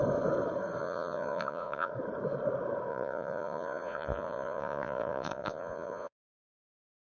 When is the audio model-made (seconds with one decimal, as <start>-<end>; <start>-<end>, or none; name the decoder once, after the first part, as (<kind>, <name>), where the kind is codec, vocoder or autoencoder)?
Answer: 0.8-1.9 (vocoder, Vocos); 2.9-7.1